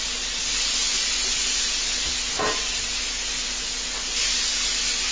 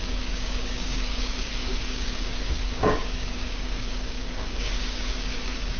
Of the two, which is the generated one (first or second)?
second